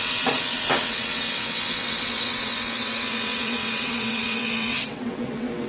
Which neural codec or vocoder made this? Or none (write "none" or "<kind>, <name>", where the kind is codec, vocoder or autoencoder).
vocoder, WaveNeXt